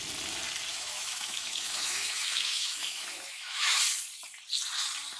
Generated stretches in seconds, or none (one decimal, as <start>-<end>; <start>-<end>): 0.7-3.8